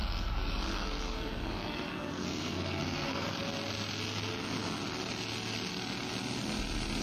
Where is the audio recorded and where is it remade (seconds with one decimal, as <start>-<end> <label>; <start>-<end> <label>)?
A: 0.0-3.4 remade; 3.4-7.0 recorded